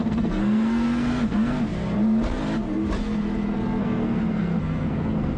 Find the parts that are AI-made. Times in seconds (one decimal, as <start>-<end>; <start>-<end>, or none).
0.0-1.7; 3.8-5.4